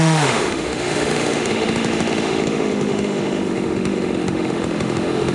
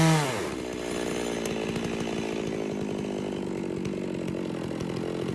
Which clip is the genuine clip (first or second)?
second